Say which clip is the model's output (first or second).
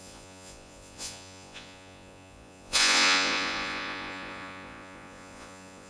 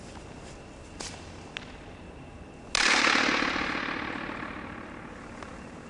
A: first